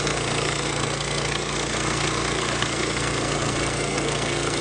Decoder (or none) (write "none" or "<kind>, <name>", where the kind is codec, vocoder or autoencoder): codec, SNAC